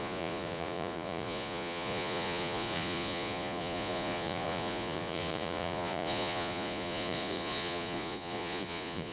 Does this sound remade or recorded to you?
remade